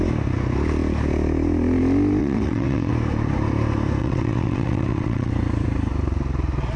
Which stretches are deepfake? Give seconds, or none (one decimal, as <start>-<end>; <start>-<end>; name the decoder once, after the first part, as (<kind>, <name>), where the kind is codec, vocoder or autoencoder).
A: 2.2-2.9 (vocoder, WaveNeXt); 4.0-5.3